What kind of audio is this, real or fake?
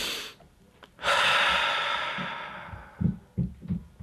real